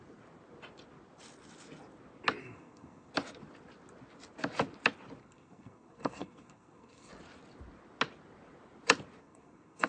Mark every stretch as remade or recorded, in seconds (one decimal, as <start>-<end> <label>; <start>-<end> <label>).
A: 0.0-2.4 recorded; 2.4-3.1 remade; 3.1-5.2 recorded; 5.2-7.1 remade; 7.1-9.2 recorded; 9.2-9.9 remade